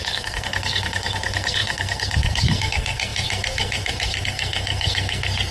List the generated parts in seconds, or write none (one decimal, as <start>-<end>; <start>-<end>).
0.0-5.5